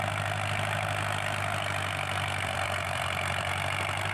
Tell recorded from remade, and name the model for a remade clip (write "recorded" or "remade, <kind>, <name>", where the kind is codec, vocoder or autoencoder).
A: remade, vocoder, BigVGAN v2